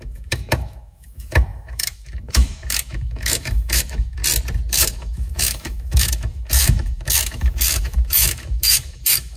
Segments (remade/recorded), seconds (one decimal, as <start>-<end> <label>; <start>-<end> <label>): 0.0-4.2 remade; 4.2-4.7 recorded; 4.7-9.4 remade